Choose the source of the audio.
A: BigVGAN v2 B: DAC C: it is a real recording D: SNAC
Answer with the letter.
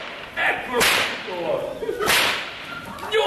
C